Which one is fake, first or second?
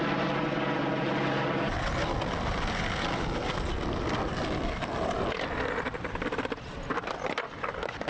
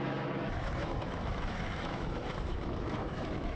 second